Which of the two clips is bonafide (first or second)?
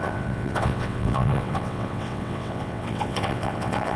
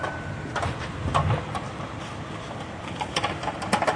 second